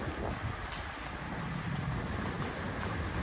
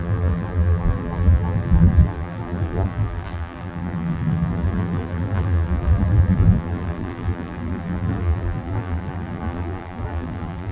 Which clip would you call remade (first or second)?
second